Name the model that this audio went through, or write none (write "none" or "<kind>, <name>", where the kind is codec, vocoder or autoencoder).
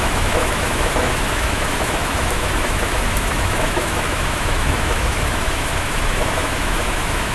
autoencoder, DAC-VAE